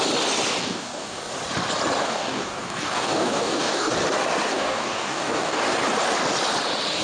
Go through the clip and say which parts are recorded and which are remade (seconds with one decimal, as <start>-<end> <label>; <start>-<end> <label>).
0.0-0.6 recorded; 0.6-1.3 remade; 1.3-2.0 recorded; 2.0-3.9 remade; 3.9-4.5 recorded; 4.5-5.6 remade; 5.6-7.0 recorded